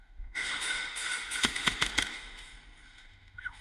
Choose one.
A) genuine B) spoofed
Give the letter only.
B